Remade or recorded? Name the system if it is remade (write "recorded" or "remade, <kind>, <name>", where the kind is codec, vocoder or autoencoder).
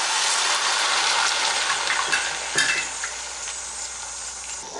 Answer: recorded